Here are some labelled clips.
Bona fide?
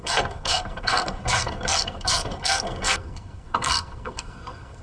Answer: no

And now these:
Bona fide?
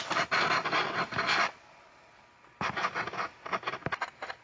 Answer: yes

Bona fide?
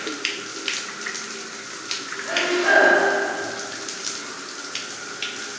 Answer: yes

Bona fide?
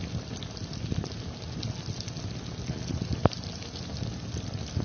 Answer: yes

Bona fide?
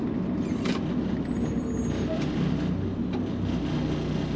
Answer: yes